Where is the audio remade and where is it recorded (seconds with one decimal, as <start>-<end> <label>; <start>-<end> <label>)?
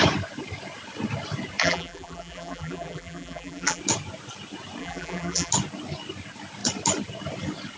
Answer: 0.0-1.6 recorded; 1.6-3.8 remade; 3.8-4.8 recorded; 4.8-5.5 remade; 5.5-7.8 recorded